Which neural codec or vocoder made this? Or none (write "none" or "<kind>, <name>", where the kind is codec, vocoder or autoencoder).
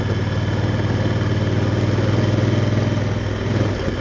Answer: none